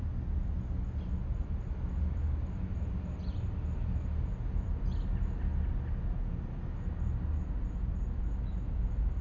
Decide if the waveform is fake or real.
real